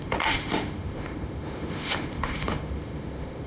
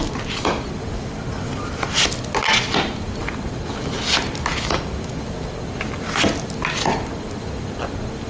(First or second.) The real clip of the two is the second